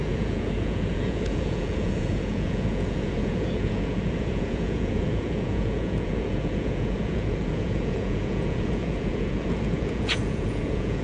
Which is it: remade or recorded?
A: remade